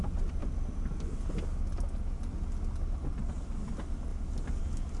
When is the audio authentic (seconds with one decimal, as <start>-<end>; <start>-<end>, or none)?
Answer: 0.0-5.0